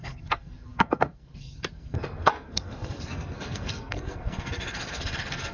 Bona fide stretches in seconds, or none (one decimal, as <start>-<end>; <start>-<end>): none